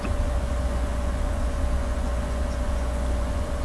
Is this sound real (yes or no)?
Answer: no